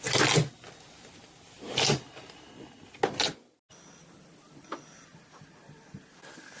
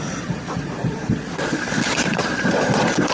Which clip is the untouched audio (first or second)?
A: first